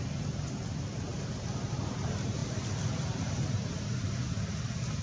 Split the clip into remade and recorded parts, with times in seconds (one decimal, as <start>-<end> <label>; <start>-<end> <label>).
0.0-5.0 recorded